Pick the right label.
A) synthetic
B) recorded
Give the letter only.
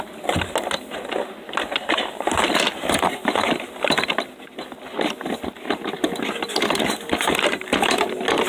B